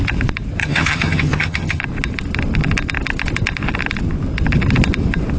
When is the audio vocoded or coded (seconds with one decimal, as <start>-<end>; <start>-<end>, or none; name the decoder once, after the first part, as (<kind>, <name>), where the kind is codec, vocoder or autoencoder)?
0.6-1.8 (vocoder, HiFi-GAN)